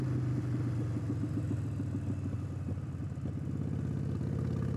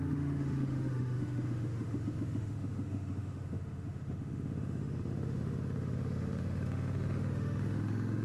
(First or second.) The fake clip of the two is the second